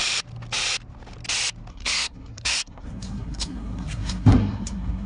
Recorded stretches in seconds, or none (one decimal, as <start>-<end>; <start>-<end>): 0.0-1.7

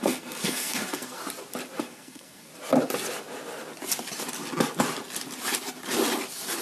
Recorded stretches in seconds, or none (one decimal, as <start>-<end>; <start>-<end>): 1.2-1.8; 2.5-6.6

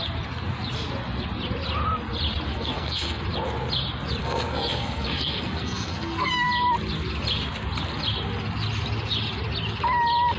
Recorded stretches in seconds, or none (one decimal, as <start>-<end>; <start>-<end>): 0.0-2.5; 3.2-4.2; 6.5-10.4